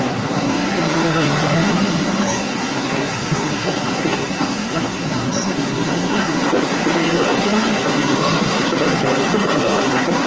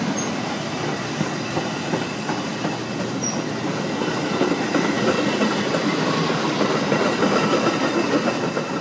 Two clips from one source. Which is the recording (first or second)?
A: second